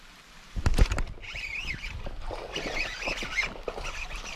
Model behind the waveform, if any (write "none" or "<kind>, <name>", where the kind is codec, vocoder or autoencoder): none